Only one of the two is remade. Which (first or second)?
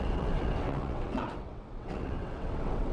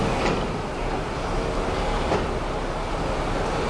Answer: first